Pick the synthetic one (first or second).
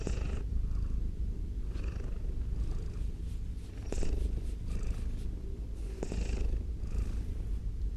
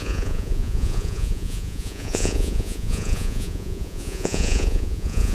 second